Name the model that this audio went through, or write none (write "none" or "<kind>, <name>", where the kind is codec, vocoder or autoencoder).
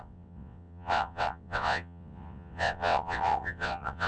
vocoder, WaveNeXt